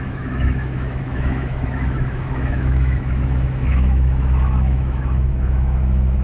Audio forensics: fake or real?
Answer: fake